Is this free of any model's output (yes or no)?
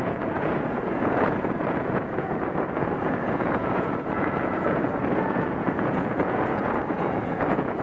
no